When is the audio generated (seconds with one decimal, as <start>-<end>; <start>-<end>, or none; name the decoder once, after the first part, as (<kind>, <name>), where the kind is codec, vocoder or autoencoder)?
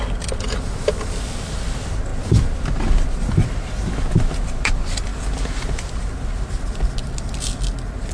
none